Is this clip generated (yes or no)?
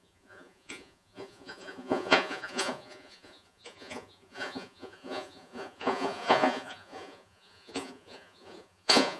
yes